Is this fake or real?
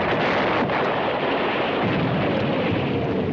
real